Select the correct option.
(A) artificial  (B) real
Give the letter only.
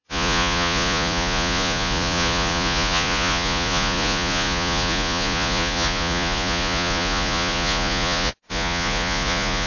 A